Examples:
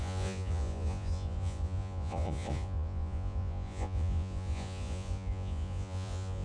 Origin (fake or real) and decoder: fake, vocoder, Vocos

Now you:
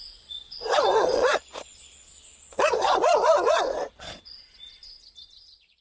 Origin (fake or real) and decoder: fake, vocoder, Vocos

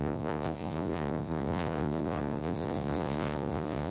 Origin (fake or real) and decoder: fake, vocoder, Vocos